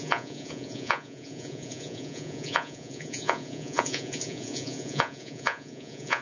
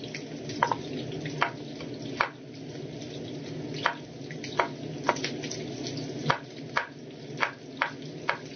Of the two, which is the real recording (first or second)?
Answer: second